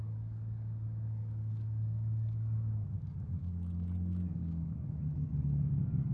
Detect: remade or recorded remade